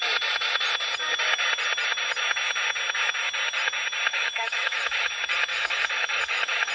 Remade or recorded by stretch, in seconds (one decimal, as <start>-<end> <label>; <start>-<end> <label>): 0.0-4.1 recorded; 4.1-5.1 remade; 5.1-5.5 recorded; 5.5-6.7 remade